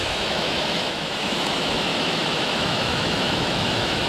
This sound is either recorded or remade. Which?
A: remade